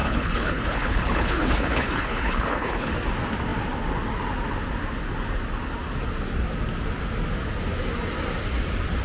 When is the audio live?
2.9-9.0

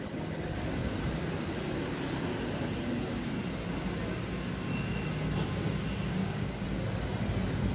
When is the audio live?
0.0-7.7

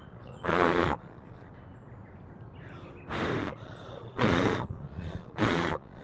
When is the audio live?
1.5-3.4

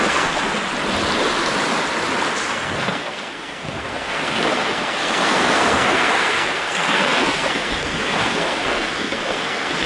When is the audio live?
0.5-2.5

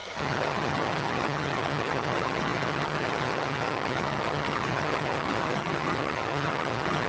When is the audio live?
none